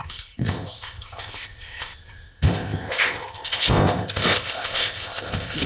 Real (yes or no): no